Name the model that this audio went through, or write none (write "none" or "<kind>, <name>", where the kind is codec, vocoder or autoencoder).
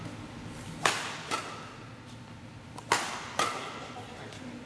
none